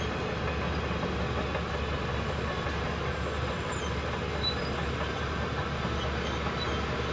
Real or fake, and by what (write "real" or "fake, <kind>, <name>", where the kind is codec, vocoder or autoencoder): real